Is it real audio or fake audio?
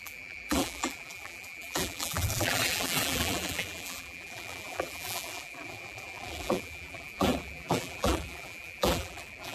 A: fake